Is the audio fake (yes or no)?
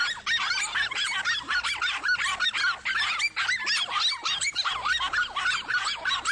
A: no